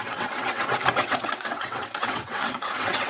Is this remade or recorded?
remade